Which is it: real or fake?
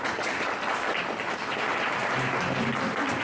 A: real